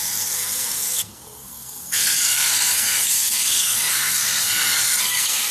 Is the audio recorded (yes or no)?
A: no